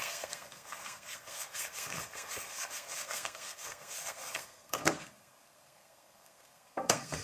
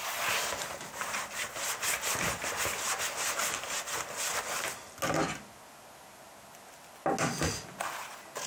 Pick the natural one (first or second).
second